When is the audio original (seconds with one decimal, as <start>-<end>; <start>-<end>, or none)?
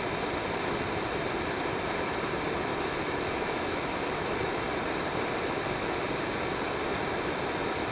0.0-2.7; 4.6-7.9